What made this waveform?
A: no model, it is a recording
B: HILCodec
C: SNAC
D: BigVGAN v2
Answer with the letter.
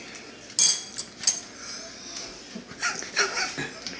A